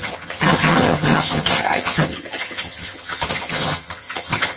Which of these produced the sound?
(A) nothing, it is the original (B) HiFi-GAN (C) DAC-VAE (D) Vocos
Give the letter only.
B